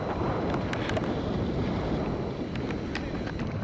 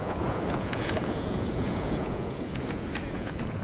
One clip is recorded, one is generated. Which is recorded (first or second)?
first